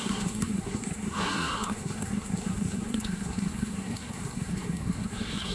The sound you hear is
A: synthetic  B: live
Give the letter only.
A